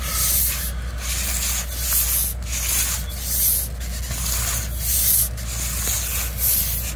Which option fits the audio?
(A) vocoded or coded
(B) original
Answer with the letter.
B